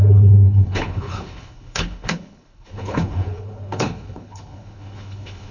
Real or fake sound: fake